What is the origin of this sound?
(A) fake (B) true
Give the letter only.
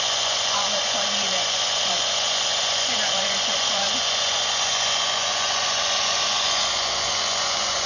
A